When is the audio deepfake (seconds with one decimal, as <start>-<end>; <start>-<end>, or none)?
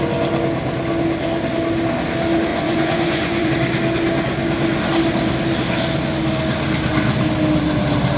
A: 2.5-3.5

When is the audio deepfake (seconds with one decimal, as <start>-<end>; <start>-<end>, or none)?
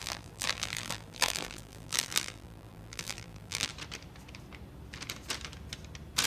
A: 0.0-3.7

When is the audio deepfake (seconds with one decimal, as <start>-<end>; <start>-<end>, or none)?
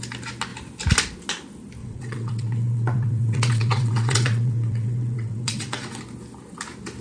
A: 1.8-6.0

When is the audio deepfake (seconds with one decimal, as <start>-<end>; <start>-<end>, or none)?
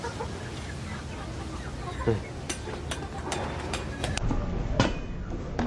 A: none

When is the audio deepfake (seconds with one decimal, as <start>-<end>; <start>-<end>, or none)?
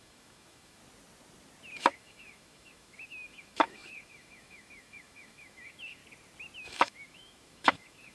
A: 0.0-0.8; 1.8-6.0; 6.6-8.1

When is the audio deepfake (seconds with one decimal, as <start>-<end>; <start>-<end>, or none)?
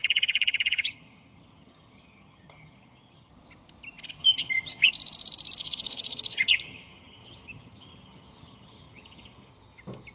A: 0.0-3.3; 4.2-4.9; 5.6-9.5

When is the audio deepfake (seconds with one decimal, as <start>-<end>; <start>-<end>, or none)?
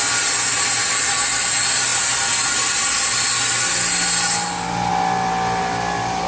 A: none